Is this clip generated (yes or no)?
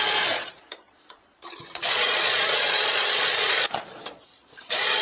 yes